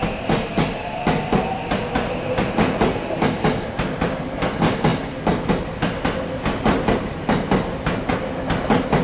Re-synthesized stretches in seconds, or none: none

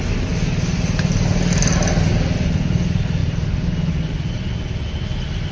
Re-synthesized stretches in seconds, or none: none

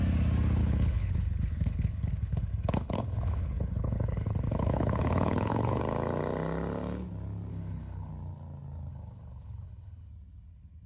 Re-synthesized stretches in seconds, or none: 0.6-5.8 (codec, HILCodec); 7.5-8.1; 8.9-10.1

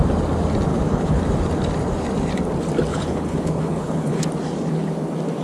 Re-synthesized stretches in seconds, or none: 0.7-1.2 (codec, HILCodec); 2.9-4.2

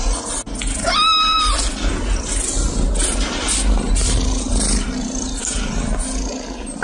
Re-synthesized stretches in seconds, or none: none

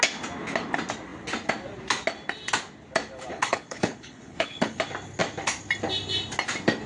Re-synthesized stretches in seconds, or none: 3.3-4.8 (codec, HILCodec)

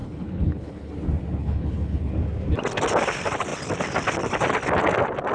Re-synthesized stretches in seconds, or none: 0.0-0.9 (codec, HILCodec); 1.4-2.1

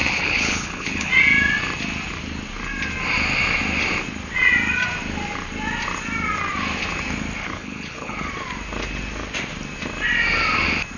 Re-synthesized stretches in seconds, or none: 0.0-1.1 (codec, HILCodec); 7.4-8.3